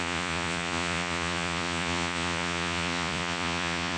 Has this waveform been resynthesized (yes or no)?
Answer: yes